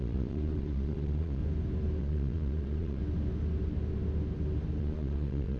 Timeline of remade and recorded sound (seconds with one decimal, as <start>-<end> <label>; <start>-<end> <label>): 0.0-1.4 remade; 1.4-2.0 recorded; 2.0-3.0 remade; 3.0-4.8 recorded; 4.8-5.6 remade